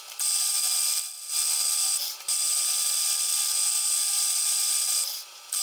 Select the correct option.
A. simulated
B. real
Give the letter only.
B